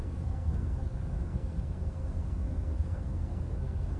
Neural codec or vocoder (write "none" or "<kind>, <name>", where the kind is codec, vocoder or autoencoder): codec, SNAC